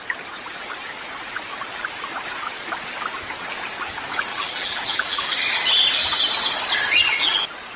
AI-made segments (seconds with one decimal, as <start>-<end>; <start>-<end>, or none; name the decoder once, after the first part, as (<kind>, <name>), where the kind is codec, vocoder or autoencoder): 4.3-5.3 (vocoder, BigVGAN v2)